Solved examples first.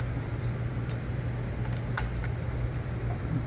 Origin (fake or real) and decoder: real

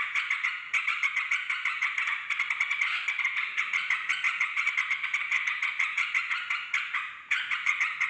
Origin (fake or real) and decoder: fake, vocoder, Vocos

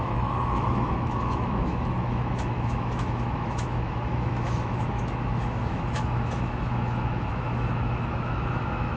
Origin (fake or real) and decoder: fake, autoencoder, DAC-VAE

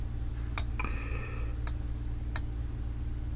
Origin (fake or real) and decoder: real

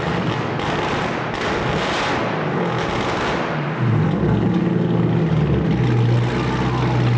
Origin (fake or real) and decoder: real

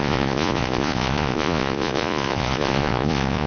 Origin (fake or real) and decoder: fake, vocoder, Vocos